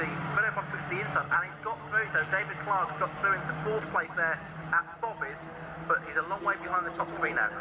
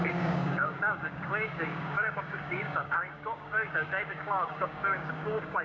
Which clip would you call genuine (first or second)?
first